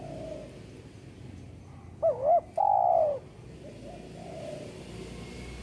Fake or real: real